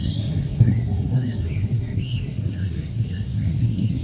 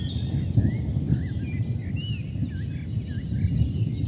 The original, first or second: second